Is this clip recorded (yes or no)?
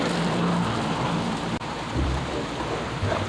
no